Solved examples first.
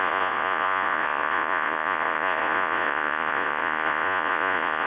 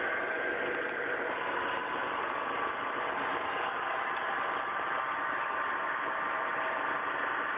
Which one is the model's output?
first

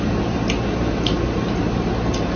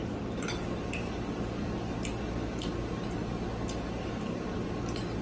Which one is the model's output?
first